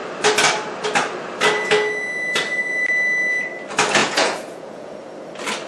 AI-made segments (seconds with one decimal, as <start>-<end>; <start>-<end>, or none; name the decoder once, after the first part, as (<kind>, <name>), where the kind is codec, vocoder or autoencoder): 4.0-4.9 (vocoder, Vocos)